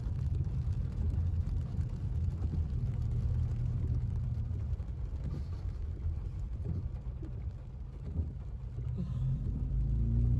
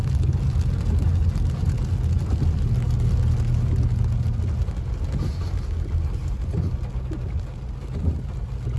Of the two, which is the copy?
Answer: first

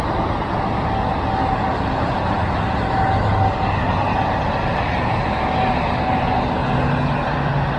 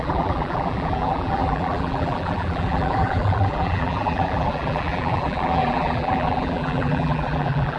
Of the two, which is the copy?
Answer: second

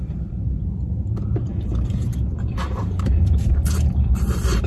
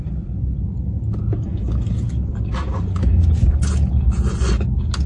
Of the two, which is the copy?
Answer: first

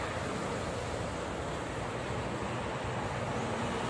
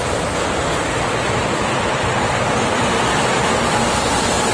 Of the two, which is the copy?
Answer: second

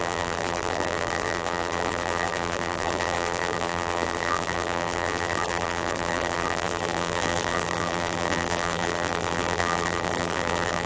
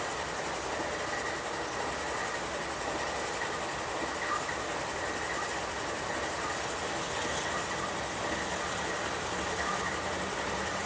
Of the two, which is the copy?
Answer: first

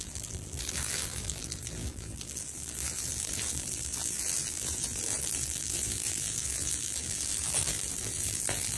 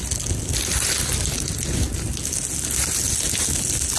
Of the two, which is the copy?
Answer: first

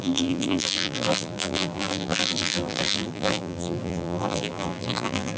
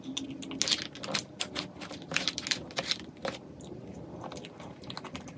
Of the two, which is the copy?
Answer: first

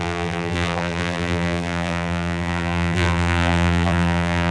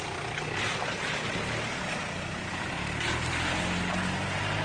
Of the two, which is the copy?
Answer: first